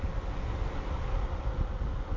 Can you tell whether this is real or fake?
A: real